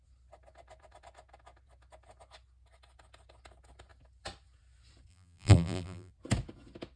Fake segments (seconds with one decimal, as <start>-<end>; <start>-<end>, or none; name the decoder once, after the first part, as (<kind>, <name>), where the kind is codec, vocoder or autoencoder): 5.1-6.1 (vocoder, BigVGAN v2)